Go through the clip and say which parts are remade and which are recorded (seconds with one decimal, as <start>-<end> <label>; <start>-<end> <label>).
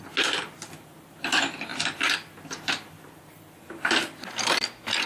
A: 0.0-1.7 recorded; 1.7-3.2 remade; 3.2-5.1 recorded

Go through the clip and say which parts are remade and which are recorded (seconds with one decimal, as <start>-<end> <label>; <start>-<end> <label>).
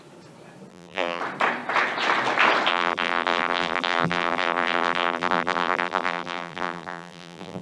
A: 0.0-0.7 recorded; 0.7-1.2 remade; 1.2-2.7 recorded; 2.7-7.6 remade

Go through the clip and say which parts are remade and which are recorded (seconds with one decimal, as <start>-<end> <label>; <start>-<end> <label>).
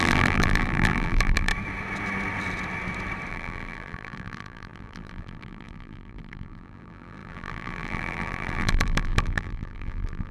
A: 0.0-1.5 remade; 1.5-3.3 recorded; 3.3-10.3 remade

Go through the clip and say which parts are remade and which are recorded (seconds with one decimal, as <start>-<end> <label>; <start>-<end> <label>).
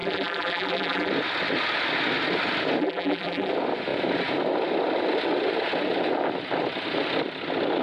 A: 0.0-1.1 remade; 1.1-2.8 recorded; 2.8-3.5 remade; 3.5-7.8 recorded